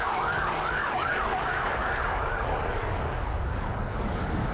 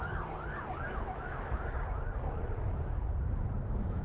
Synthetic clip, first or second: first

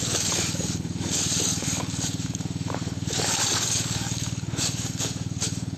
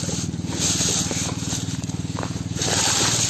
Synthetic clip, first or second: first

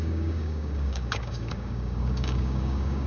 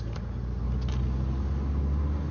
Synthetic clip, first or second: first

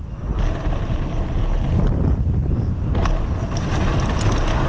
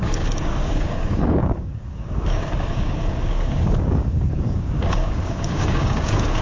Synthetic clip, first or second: second